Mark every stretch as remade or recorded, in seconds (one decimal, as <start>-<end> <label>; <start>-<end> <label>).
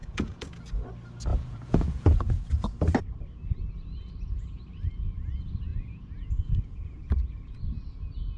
0.0-0.6 remade; 0.6-1.3 recorded; 1.3-2.3 remade; 2.3-5.7 recorded; 5.7-7.6 remade; 7.6-8.4 recorded